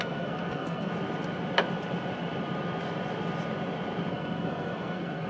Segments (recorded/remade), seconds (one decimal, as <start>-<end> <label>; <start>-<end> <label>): 0.0-0.9 remade; 0.9-4.1 recorded; 4.1-5.3 remade